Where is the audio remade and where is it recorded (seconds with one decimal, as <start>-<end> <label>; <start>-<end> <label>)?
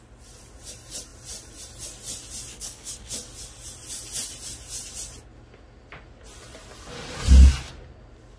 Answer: 0.0-2.5 recorded; 2.5-3.1 remade; 3.1-8.4 recorded